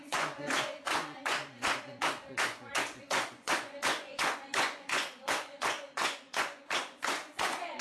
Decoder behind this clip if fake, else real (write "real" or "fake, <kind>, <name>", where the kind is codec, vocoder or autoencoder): fake, vocoder, Vocos